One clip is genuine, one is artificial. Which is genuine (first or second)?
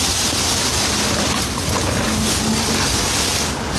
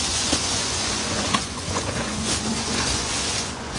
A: first